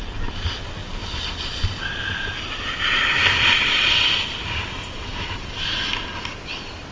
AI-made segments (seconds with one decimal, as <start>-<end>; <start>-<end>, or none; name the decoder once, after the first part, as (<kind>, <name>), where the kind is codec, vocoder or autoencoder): 0.8-1.6 (vocoder, BigVGAN v2); 5.1-6.0

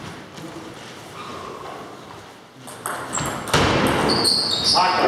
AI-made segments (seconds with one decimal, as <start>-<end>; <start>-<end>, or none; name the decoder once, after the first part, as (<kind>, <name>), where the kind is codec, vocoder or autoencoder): none